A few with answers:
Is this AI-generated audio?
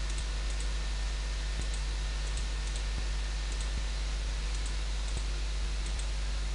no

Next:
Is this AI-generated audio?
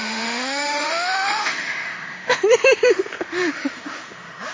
yes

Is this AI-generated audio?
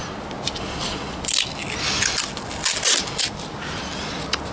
no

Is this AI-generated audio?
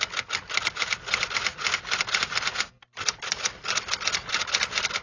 no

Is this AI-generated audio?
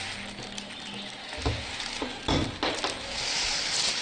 no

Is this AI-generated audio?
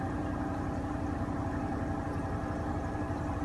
no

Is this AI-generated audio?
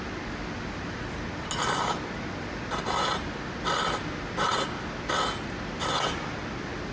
no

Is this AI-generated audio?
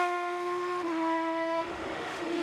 yes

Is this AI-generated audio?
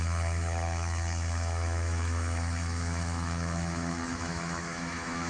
yes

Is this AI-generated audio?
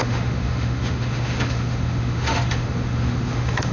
yes